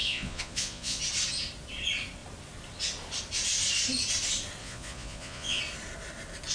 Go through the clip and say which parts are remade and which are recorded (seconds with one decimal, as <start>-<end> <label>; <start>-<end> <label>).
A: 0.0-1.0 remade; 1.0-4.6 recorded; 4.6-5.6 remade; 5.6-6.5 recorded